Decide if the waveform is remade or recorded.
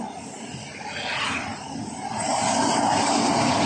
recorded